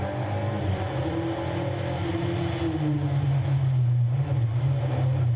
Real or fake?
real